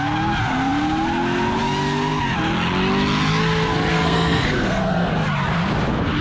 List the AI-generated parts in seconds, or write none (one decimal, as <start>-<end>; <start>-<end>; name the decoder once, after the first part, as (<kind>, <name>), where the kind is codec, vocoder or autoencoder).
3.9-5.1 (codec, SNAC)

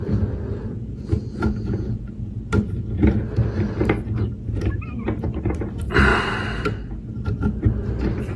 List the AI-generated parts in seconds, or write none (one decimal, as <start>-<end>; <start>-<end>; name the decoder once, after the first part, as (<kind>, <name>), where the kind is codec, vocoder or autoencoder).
0.0-2.4 (vocoder, Vocos)